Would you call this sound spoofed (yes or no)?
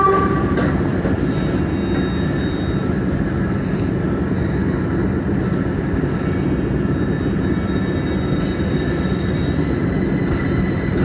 no